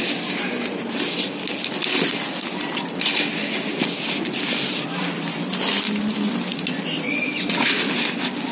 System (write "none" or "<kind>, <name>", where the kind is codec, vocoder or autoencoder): none